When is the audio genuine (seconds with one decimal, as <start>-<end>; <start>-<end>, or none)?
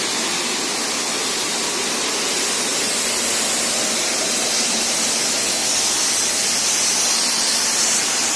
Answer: 0.0-8.4